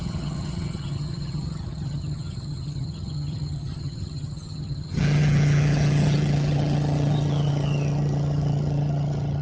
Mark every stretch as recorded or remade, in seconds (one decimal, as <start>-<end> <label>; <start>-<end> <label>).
0.0-9.4 remade